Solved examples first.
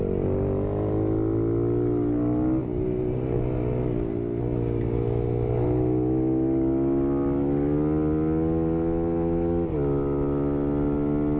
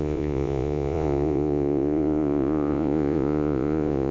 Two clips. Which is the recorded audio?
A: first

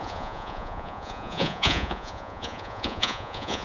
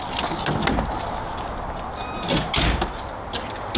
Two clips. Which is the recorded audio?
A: second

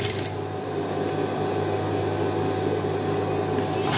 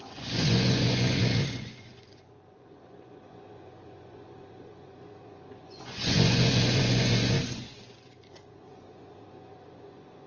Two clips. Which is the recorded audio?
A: first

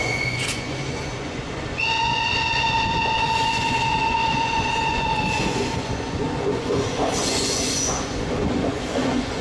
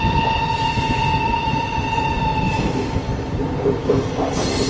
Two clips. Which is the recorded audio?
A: second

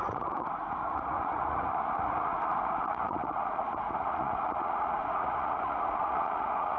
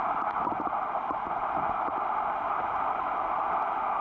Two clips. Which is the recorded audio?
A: second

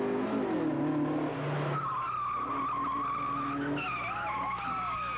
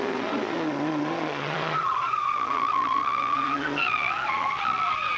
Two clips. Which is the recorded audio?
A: first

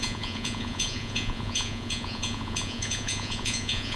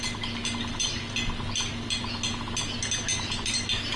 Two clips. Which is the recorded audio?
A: second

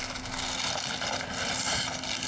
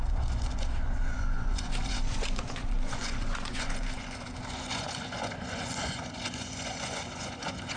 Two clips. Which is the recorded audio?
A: first